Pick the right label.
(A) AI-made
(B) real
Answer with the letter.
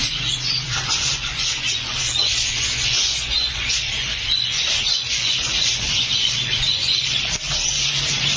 A